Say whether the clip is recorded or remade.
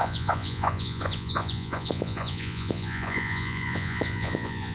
remade